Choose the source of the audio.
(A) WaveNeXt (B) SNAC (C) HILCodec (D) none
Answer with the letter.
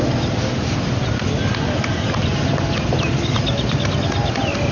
D